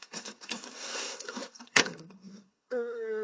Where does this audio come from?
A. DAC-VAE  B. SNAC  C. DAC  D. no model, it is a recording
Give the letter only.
B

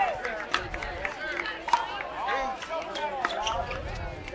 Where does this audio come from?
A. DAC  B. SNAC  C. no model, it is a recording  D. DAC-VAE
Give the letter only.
C